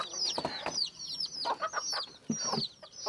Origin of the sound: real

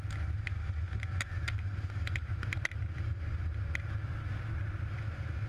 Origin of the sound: real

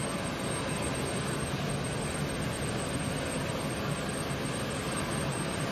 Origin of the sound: real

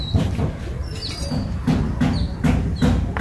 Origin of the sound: real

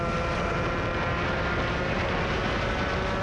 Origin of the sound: real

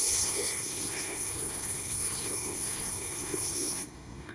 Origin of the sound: fake